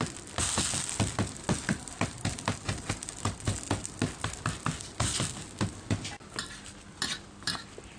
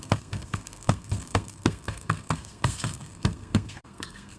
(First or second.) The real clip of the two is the first